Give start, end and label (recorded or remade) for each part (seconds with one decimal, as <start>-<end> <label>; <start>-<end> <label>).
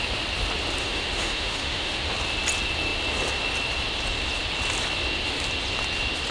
0.0-0.8 recorded; 0.8-2.1 remade; 2.1-6.3 recorded